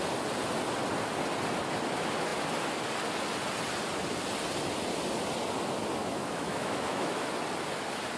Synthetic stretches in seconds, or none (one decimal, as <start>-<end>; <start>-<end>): 6.0-7.3